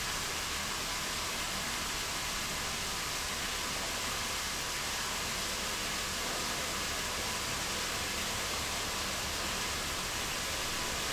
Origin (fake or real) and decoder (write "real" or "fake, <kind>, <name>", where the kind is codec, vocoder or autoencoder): real